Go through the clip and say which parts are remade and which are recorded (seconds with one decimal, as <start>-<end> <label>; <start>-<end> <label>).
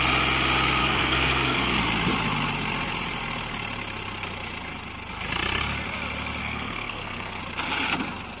0.0-0.8 recorded; 0.8-1.8 remade; 1.8-6.4 recorded; 6.4-7.4 remade; 7.4-8.4 recorded